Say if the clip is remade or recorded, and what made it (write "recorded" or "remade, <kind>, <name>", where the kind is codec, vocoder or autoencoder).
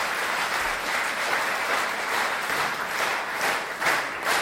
remade, vocoder, BigVGAN v2